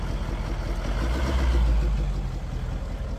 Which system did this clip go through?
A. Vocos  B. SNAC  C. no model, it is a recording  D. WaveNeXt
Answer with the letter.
C